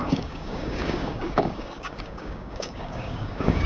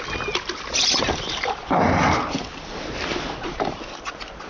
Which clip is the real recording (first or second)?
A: second